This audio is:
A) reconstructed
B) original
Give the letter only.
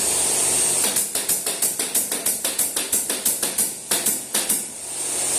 B